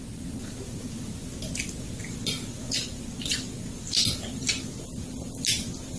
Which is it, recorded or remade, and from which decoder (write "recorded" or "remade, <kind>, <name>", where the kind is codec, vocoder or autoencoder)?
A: recorded